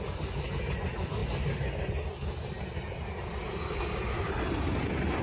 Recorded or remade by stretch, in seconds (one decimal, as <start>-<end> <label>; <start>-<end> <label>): 0.0-5.2 recorded